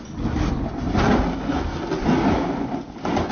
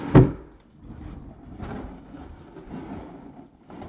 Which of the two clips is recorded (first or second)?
first